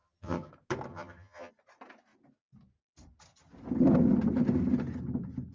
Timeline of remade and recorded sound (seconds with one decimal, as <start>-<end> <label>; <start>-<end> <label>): 0.0-0.5 remade; 0.5-0.9 recorded; 0.9-1.5 remade; 1.5-5.5 recorded